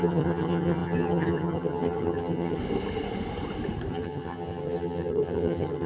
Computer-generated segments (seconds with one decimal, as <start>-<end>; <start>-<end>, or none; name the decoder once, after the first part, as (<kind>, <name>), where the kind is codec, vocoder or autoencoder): 0.0-2.6 (vocoder, HiFi-GAN); 3.9-5.9